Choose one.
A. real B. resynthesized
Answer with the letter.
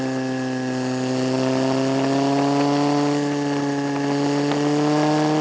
A